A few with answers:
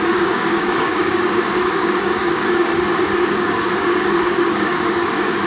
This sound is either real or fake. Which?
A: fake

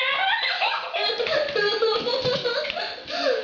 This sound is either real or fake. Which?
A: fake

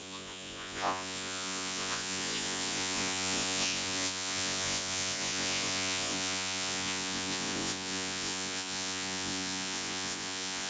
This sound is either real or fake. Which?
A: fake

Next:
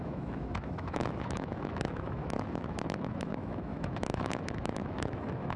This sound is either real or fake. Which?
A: fake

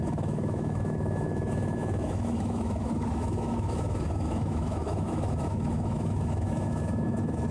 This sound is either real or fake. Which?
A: fake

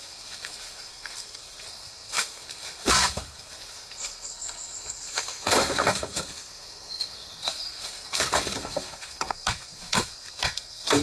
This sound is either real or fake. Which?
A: fake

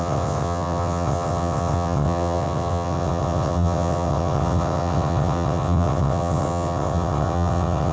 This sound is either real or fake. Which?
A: fake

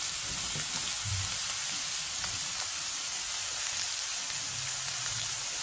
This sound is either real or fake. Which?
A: real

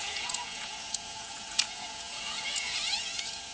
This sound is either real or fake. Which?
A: fake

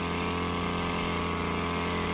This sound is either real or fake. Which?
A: real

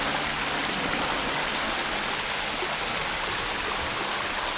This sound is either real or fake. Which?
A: real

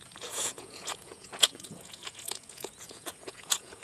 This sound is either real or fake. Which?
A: fake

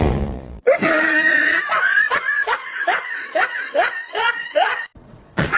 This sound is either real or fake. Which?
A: fake